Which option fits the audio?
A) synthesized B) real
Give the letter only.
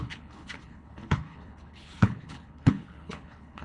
A